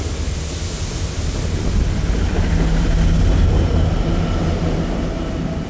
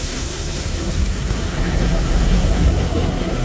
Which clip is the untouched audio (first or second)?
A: first